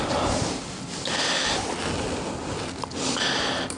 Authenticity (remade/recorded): recorded